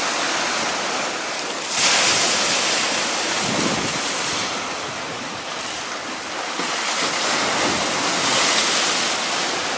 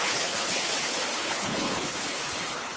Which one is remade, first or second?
second